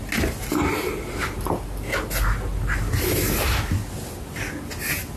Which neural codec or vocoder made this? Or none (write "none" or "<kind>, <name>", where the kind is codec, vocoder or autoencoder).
none